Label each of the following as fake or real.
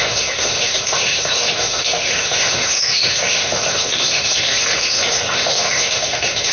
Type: fake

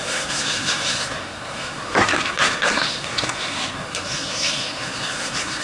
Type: fake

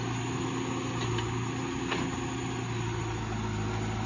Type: real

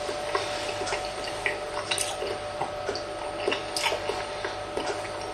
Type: real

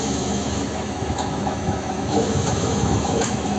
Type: fake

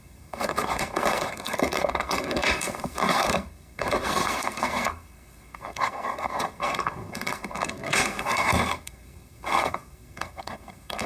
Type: fake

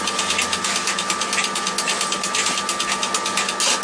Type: real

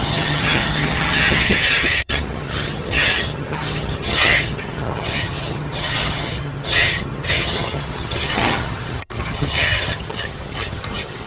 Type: fake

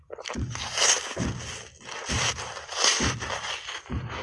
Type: real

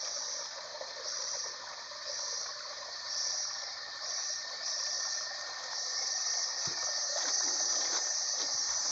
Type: fake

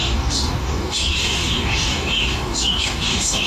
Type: fake